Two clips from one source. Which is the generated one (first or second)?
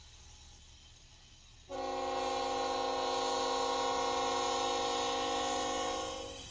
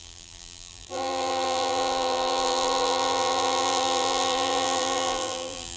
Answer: second